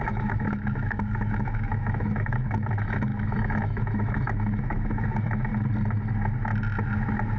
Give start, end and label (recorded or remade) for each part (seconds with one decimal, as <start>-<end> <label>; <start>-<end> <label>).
0.0-5.5 remade; 5.5-7.4 recorded